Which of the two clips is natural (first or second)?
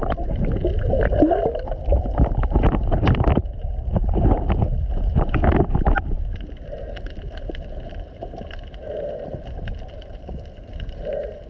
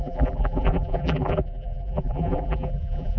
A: first